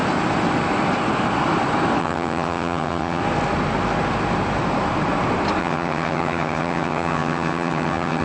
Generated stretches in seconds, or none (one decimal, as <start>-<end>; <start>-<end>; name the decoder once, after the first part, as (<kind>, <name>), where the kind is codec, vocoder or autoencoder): 2.0-3.2 (vocoder, HiFi-GAN); 5.6-8.2